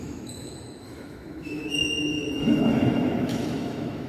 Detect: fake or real fake